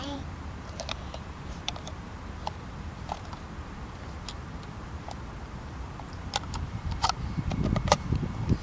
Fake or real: fake